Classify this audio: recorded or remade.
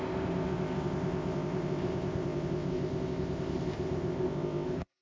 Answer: remade